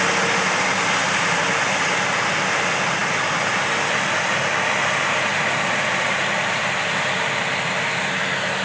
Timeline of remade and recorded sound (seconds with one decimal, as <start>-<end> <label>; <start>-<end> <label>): 0.0-8.6 recorded